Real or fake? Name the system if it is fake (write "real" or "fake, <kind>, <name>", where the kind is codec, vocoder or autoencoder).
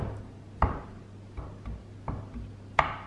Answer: real